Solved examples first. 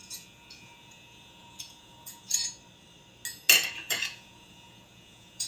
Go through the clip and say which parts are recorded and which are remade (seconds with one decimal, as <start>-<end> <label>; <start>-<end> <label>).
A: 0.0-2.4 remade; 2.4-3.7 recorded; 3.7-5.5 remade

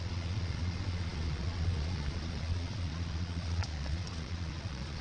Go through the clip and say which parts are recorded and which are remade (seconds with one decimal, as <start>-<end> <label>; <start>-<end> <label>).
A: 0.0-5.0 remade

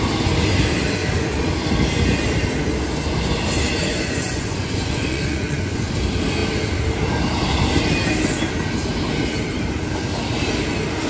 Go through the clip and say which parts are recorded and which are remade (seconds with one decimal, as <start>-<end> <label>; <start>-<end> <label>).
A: 0.0-1.0 recorded; 1.0-1.5 remade; 1.5-3.8 recorded; 3.8-5.9 remade; 5.9-11.1 recorded

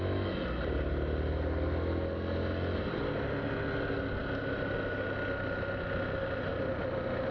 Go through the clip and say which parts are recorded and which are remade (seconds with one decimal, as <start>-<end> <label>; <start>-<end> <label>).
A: 0.0-7.3 recorded